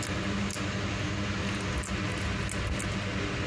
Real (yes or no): yes